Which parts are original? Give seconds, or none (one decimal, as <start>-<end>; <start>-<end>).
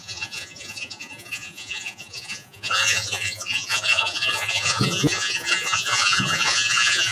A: none